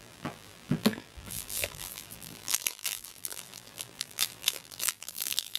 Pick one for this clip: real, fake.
fake